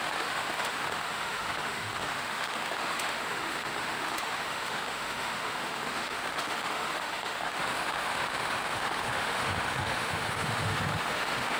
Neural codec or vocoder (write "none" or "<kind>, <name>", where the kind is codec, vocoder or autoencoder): autoencoder, DAC-VAE